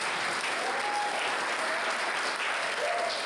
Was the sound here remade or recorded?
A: recorded